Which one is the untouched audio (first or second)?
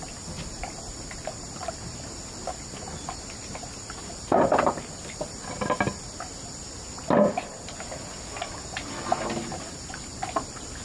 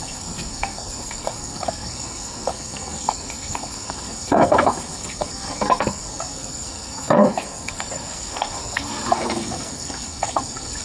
first